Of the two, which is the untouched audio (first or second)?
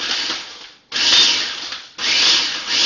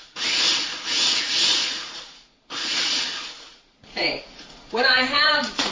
first